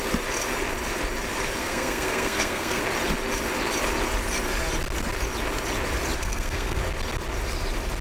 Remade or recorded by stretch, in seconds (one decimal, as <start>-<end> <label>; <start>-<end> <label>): 0.0-1.6 recorded; 1.6-2.8 remade; 2.8-6.2 recorded; 6.2-6.8 remade; 6.8-8.0 recorded